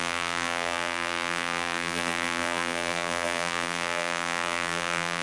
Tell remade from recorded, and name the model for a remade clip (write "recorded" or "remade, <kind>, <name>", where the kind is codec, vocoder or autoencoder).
remade, vocoder, BigVGAN v2